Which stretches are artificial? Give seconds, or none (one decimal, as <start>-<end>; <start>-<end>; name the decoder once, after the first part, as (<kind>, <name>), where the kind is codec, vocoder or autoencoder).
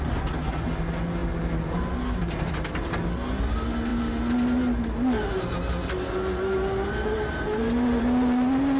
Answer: none